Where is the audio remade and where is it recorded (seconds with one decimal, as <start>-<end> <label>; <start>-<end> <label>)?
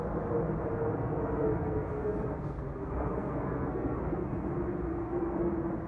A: 0.0-1.0 recorded; 1.0-4.5 remade; 4.5-4.9 recorded; 4.9-5.5 remade; 5.5-5.9 recorded